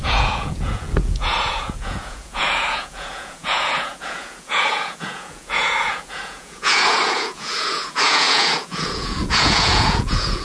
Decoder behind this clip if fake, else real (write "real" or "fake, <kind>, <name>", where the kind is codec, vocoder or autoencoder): fake, vocoder, Vocos